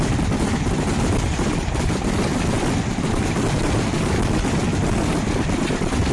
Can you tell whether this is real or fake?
real